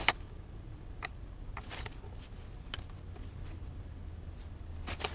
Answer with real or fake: real